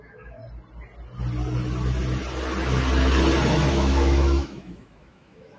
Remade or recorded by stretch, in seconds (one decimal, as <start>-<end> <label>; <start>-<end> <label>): 0.0-0.4 remade; 0.4-3.7 recorded; 3.7-5.6 remade